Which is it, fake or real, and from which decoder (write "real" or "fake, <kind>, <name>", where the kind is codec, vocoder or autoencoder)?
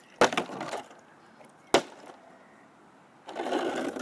real